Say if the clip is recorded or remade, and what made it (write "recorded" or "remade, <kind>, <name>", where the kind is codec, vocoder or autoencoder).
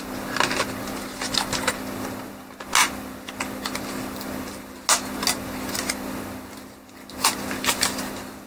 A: recorded